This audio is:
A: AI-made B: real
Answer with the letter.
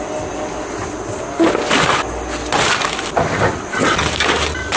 B